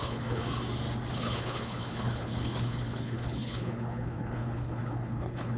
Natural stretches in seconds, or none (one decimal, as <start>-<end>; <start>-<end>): 0.4-1.1